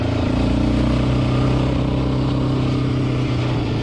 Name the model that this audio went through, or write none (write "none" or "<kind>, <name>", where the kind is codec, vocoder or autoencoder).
none